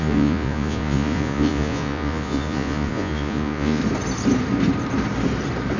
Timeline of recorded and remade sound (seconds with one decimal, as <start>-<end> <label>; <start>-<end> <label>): 0.0-3.8 remade; 3.8-5.8 recorded